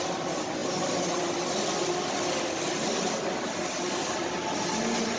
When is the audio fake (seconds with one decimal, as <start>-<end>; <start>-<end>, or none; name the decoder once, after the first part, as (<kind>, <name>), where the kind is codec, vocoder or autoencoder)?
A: none